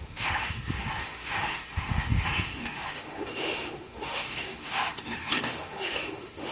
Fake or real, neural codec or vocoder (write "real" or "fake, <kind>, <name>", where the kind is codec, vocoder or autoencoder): fake, autoencoder, DAC-VAE